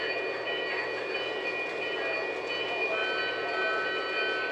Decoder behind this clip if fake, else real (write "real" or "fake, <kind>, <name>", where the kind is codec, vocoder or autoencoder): real